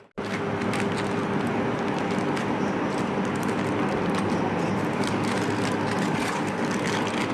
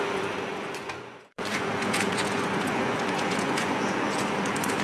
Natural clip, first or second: first